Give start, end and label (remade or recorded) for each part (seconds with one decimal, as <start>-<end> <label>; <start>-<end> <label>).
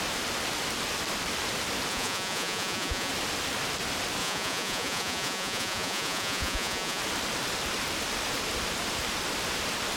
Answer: 0.0-1.9 recorded; 1.9-3.1 remade; 3.1-4.2 recorded; 4.2-7.0 remade; 7.0-10.0 recorded